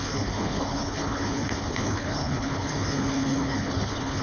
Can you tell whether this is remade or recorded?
remade